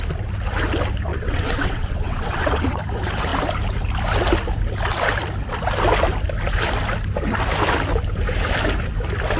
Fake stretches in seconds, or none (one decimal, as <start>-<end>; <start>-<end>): 1.1-2.8